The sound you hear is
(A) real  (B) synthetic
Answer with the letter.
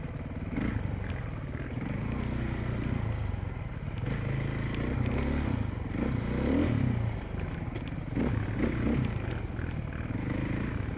A